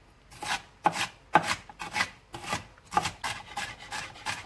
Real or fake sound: real